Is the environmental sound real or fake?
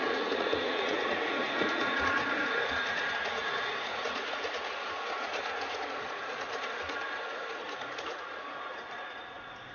fake